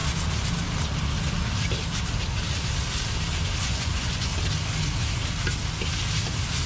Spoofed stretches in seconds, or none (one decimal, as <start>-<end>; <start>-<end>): 3.6-4.3

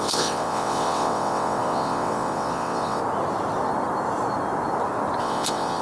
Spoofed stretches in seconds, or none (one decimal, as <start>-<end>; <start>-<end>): 0.0-3.0; 5.2-5.8

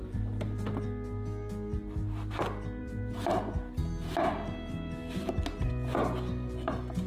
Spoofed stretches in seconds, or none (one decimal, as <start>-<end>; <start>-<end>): 2.8-3.4; 3.8-5.7

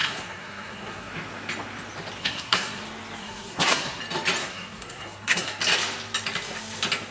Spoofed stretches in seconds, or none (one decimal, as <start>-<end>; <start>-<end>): 0.0-1.1; 2.2-2.8; 3.2-4.0; 4.4-5.6

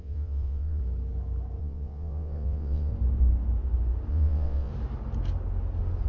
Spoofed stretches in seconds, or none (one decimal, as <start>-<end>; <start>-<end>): 0.0-0.8; 1.6-2.9; 4.1-4.7

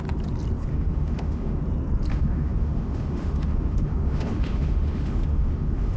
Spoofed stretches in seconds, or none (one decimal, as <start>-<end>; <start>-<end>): 0.7-1.6; 2.1-6.0